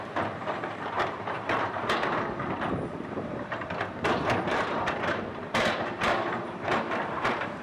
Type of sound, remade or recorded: remade